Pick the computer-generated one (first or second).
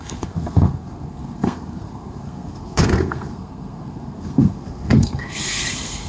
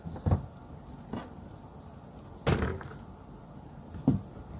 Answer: first